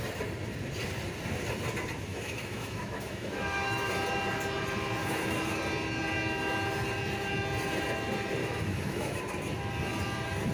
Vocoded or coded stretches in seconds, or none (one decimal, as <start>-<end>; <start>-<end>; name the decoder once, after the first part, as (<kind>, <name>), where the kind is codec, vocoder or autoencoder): 2.1-3.9 (autoencoder, DAC-VAE); 5.0-5.6; 8.4-9.2